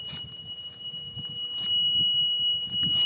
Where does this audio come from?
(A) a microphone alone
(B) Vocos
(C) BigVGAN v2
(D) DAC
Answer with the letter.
A